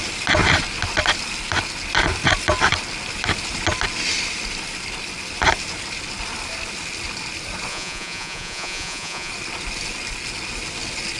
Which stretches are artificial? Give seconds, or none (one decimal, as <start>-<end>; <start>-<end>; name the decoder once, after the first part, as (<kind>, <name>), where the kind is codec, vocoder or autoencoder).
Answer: 7.7-9.3 (vocoder, Vocos)

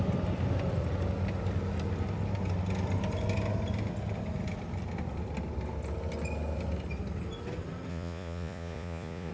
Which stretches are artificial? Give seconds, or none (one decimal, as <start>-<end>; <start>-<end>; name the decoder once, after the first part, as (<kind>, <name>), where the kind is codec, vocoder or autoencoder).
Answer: 7.9-9.3 (vocoder, Vocos)